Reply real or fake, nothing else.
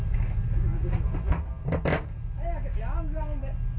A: real